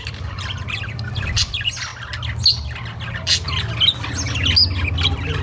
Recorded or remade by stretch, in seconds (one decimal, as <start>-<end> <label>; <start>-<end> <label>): 0.0-1.9 remade; 1.9-5.4 recorded